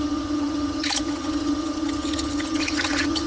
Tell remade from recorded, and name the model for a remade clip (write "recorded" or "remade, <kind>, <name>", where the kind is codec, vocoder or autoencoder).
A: remade, vocoder, HiFi-GAN